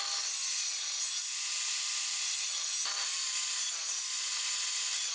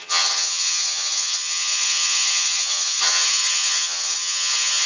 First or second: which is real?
first